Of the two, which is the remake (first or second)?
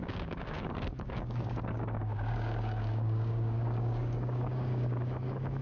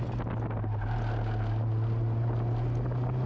first